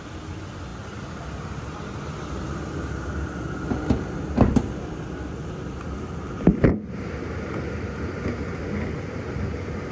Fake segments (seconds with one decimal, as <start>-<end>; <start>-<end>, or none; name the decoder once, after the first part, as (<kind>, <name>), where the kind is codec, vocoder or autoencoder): none